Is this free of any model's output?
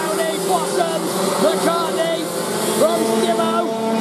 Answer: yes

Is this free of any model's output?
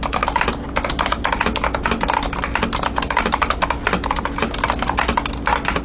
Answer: yes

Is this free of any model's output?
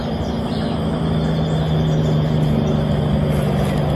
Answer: yes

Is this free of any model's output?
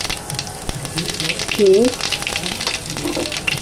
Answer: yes